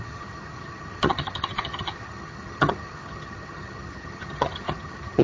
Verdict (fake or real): fake